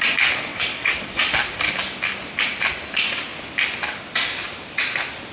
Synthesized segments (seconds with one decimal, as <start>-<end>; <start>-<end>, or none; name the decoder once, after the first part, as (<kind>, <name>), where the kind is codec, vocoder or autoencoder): 0.5-1.2 (vocoder, WaveNeXt)

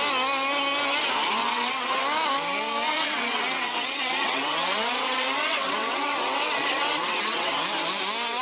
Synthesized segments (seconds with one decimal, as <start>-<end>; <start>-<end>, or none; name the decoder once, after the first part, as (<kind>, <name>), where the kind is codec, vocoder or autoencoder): 1.4-2.0 (vocoder, WaveNeXt); 2.9-7.5

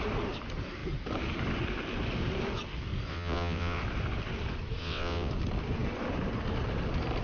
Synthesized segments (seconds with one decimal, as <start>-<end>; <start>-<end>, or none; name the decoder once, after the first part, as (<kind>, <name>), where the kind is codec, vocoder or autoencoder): 3.1-3.8 (vocoder, WaveNeXt); 4.8-5.3